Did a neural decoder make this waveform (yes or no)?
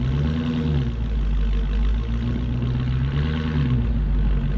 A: no